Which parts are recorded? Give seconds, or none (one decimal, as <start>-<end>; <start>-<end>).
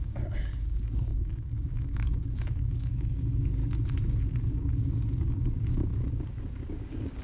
3.6-4.4